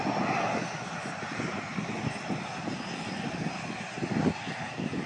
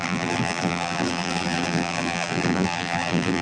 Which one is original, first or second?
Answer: first